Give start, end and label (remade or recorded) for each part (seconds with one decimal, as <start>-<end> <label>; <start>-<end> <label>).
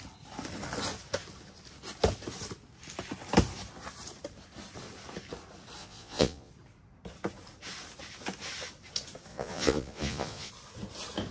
0.0-5.8 recorded; 5.8-6.5 remade; 6.5-9.3 recorded; 9.3-10.5 remade; 10.5-11.3 recorded